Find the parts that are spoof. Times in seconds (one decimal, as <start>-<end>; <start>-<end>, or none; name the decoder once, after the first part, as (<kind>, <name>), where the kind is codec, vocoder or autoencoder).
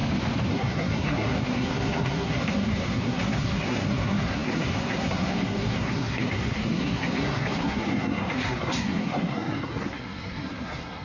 0.5-11.0 (codec, SNAC)